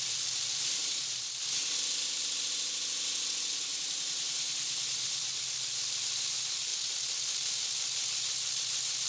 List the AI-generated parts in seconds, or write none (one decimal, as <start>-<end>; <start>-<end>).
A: none

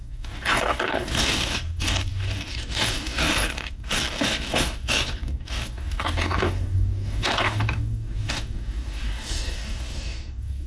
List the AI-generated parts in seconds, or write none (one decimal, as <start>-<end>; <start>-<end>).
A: 0.0-10.7

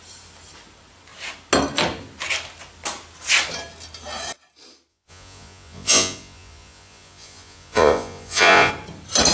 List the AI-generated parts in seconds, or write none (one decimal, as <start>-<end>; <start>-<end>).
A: 4.9-8.7

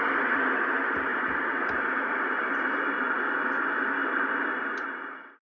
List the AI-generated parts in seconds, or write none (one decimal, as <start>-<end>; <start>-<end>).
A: none